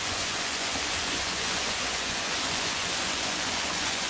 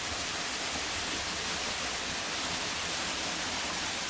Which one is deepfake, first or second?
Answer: first